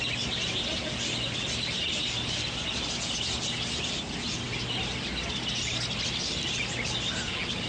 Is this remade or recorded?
recorded